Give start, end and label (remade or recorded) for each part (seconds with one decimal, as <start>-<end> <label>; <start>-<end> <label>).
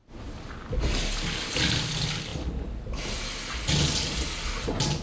0.0-5.0 recorded